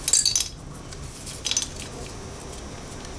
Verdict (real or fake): real